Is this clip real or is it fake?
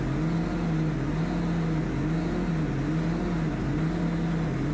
real